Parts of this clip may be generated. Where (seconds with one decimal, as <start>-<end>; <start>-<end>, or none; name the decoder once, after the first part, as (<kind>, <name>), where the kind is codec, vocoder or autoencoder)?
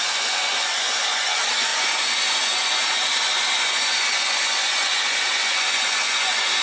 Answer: 0.0-6.6 (vocoder, Vocos)